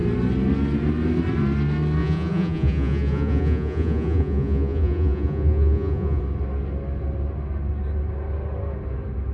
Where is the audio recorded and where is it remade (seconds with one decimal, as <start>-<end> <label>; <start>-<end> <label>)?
0.0-2.0 recorded; 2.0-6.2 remade; 6.2-9.3 recorded